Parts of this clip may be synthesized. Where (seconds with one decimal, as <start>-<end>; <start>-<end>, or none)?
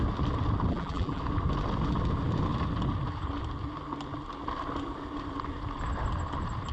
0.7-1.2